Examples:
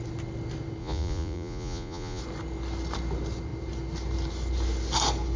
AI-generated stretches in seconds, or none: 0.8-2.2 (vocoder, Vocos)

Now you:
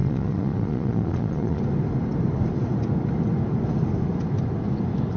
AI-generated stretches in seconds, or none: 0.0-1.6 (vocoder, Vocos)

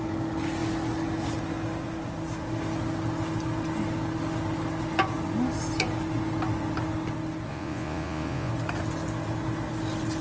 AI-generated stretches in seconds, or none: 7.5-8.5 (vocoder, Vocos)

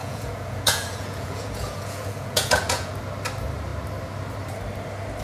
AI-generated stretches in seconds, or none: 0.0-3.0 (vocoder, Vocos)

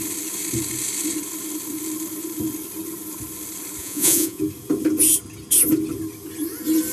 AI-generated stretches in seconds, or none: 3.8-4.4 (vocoder, Vocos)